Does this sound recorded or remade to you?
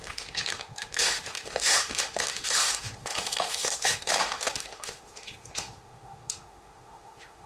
remade